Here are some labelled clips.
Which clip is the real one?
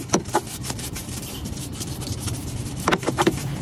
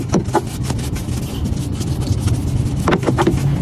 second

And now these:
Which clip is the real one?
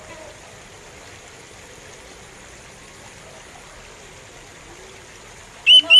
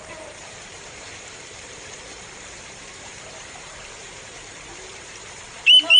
first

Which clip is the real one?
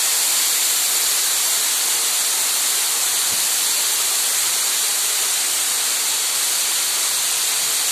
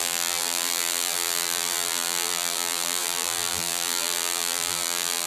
first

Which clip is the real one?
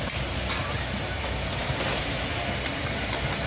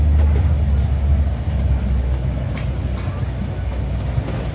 second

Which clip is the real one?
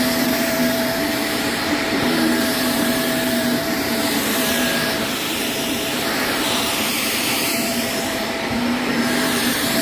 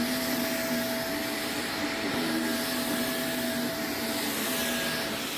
second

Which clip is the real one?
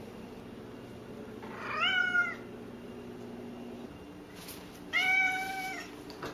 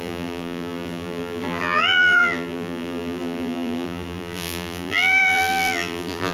first